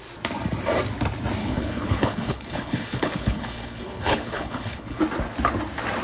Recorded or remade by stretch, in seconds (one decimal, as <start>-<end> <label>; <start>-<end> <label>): 0.0-1.4 recorded; 1.4-5.0 remade; 5.0-6.0 recorded